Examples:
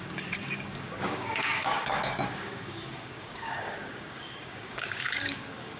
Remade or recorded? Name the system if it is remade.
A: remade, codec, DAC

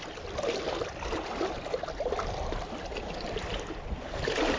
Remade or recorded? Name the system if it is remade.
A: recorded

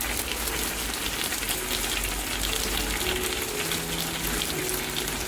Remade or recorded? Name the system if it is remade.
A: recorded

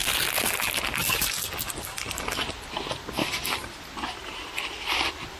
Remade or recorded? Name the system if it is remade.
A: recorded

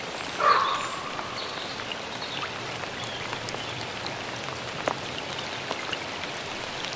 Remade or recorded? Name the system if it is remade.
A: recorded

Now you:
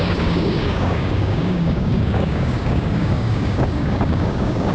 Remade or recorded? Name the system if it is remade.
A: remade, codec, DAC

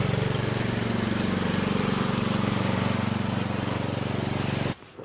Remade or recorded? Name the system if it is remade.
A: recorded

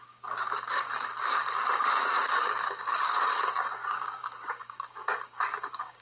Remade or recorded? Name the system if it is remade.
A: remade, codec, DAC